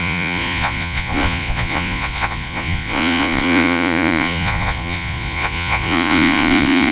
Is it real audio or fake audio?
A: fake